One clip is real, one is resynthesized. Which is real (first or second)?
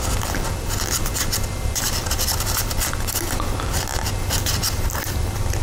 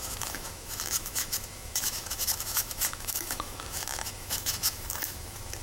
first